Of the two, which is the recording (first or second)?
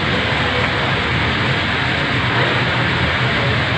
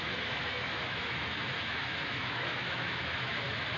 first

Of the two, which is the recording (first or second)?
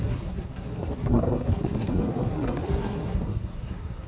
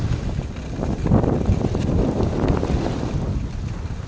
second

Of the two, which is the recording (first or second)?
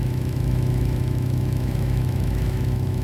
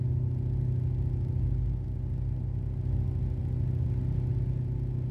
second